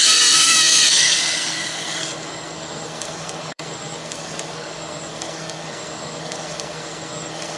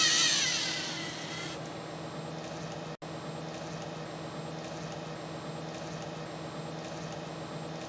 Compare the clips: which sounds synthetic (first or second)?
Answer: first